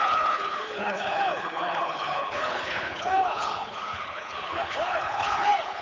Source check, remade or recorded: remade